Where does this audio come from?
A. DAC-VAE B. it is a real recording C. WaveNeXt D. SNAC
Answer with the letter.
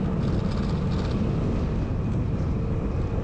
B